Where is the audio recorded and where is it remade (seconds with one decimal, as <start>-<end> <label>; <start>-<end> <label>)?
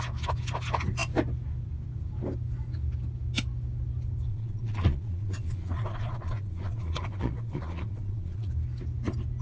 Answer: 0.0-4.3 recorded; 4.3-8.5 remade; 8.5-9.4 recorded